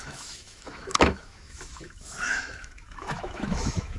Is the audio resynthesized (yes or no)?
yes